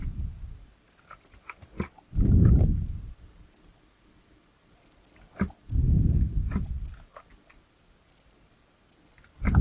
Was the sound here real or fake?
real